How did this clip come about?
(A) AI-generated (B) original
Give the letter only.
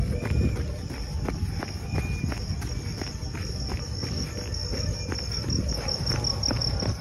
B